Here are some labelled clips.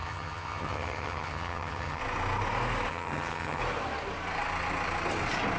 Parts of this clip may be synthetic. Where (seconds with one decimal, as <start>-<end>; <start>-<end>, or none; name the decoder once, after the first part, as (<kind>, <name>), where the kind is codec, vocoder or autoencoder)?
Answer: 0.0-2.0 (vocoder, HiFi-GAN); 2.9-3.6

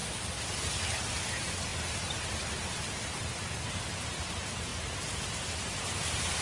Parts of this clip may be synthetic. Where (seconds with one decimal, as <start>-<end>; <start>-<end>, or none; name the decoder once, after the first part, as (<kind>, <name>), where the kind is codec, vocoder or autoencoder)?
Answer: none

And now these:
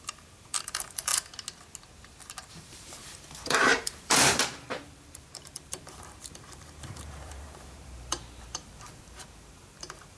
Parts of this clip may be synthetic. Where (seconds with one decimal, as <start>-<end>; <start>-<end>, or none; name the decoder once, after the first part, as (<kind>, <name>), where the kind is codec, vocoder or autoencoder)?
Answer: 0.0-1.1 (vocoder, BigVGAN v2); 2.6-10.2

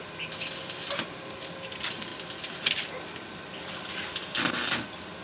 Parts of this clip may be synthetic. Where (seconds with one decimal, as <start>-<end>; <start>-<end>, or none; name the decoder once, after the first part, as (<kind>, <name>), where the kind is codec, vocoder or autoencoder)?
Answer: none

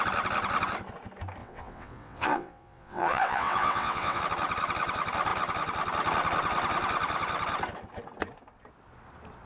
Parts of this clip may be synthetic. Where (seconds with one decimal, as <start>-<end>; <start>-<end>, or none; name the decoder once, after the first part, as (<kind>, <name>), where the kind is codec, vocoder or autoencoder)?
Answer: 1.4-4.2 (vocoder, WaveNeXt)

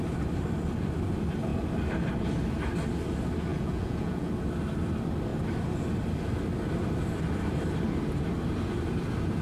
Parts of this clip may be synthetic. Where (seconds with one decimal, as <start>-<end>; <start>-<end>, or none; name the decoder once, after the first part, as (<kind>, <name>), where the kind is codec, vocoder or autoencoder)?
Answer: 3.5-4.3 (vocoder, Vocos)